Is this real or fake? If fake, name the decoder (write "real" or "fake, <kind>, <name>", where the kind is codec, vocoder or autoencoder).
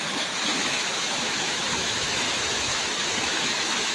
fake, autoencoder, DAC-VAE